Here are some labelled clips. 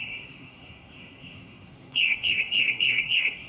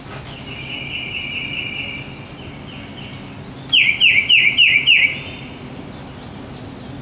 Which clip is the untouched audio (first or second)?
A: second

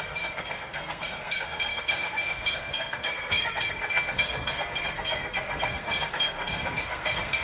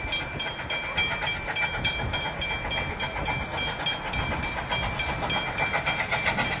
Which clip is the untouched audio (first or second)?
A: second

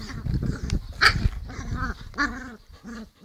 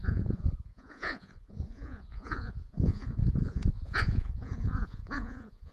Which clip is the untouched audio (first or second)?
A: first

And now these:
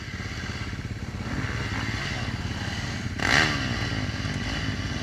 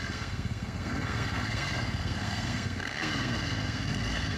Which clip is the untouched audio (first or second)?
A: first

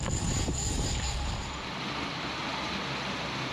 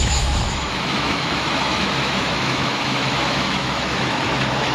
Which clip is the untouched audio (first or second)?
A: first